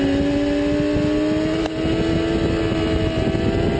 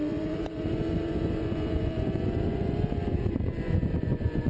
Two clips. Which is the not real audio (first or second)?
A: second